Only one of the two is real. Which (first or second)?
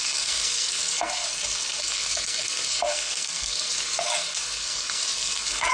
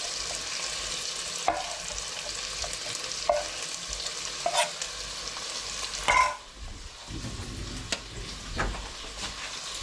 second